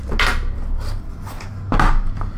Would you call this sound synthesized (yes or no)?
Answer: no